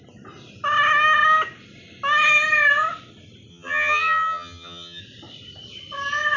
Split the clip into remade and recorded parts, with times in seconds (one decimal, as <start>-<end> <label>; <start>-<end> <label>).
0.0-3.5 recorded; 3.5-5.0 remade; 5.0-6.4 recorded